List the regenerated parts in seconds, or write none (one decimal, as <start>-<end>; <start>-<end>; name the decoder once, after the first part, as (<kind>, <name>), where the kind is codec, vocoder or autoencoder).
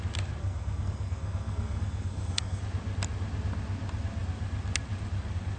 0.4-2.6 (codec, SNAC)